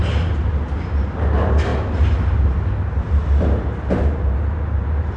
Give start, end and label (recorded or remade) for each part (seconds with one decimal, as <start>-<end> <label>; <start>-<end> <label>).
0.0-5.2 recorded